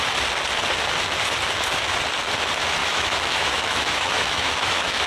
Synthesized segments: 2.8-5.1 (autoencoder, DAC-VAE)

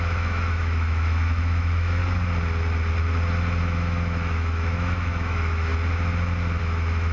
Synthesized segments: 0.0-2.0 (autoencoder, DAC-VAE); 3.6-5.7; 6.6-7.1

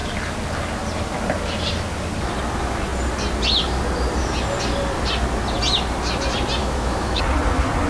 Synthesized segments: 6.6-7.2 (autoencoder, DAC-VAE)

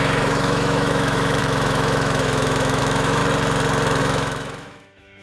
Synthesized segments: 0.0-3.2 (autoencoder, DAC-VAE); 4.0-5.2

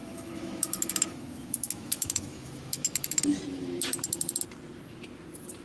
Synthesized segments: 0.0-3.4 (autoencoder, DAC-VAE)

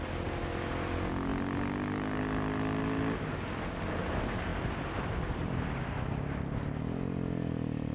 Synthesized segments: none

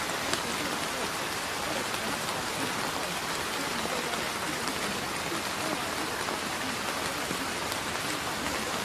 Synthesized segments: none

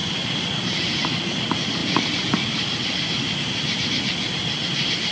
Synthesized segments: none